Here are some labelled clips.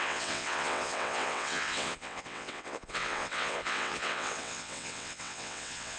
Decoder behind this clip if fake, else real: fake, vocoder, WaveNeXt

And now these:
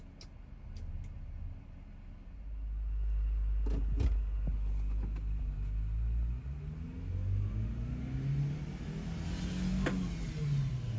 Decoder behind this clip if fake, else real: real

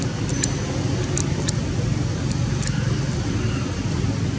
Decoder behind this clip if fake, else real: real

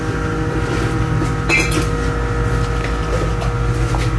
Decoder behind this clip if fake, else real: real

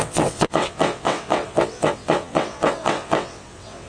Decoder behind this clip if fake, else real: fake, vocoder, WaveNeXt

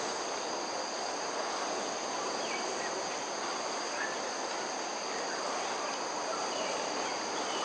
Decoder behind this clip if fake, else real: real